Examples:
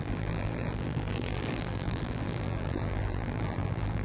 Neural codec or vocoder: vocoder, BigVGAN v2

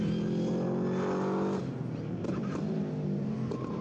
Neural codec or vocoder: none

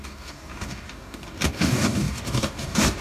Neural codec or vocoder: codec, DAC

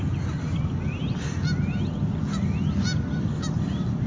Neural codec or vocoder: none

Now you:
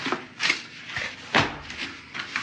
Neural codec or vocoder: none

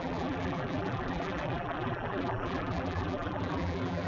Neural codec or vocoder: vocoder, BigVGAN v2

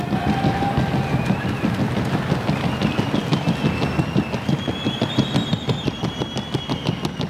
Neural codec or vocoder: none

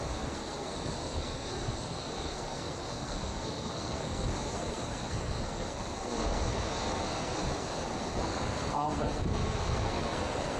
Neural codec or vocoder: codec, SNAC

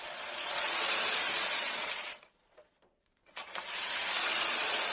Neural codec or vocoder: vocoder, Vocos